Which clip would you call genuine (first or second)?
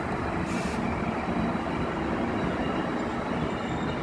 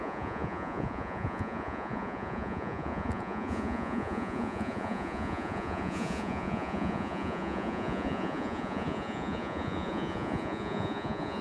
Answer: first